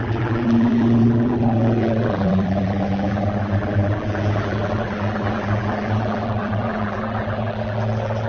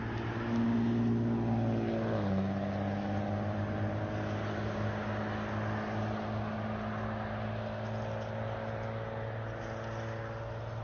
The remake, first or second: first